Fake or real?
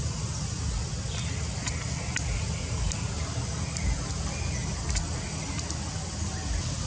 real